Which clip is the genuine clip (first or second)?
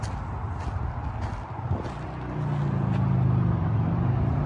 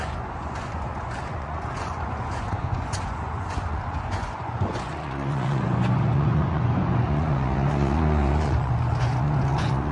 first